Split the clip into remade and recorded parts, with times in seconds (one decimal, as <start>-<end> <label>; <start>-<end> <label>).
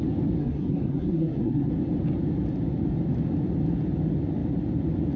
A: 0.0-0.4 recorded; 0.4-1.7 remade; 1.7-5.2 recorded